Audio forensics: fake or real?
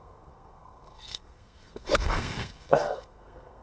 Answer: fake